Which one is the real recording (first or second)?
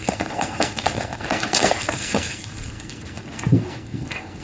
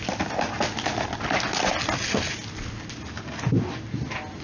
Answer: second